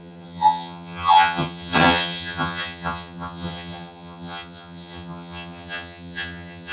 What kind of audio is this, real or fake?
fake